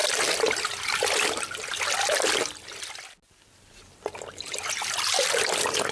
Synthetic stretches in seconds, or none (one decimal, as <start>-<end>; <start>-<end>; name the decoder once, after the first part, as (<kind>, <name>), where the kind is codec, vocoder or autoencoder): none